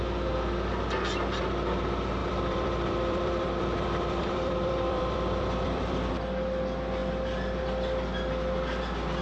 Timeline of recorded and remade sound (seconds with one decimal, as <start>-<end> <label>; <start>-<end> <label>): 0.0-2.2 recorded; 2.2-6.1 remade; 6.1-7.0 recorded; 7.0-7.6 remade; 7.6-9.2 recorded